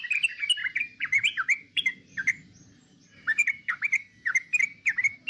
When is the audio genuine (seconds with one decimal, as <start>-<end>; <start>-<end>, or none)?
0.0-0.6; 3.8-5.3